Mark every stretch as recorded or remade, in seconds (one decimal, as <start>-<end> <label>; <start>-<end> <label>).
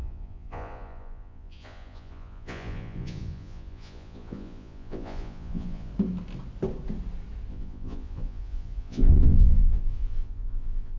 0.0-5.9 remade; 5.9-7.5 recorded; 7.5-11.0 remade